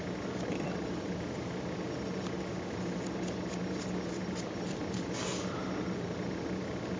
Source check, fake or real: real